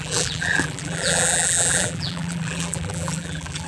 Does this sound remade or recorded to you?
remade